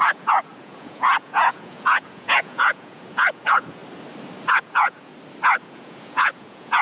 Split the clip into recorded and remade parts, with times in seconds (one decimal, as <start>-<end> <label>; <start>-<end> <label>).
0.0-3.8 remade; 3.8-4.5 recorded; 4.5-5.1 remade; 5.1-5.6 recorded; 5.6-6.8 remade